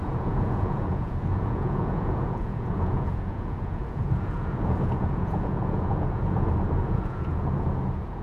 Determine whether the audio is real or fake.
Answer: fake